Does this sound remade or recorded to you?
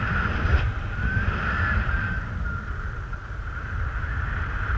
recorded